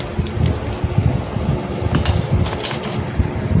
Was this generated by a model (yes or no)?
no